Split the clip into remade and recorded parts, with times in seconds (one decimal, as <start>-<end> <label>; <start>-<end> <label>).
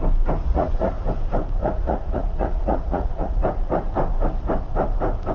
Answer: 0.0-0.4 recorded; 0.4-0.9 remade; 0.9-1.6 recorded; 1.6-3.4 remade; 3.4-5.3 recorded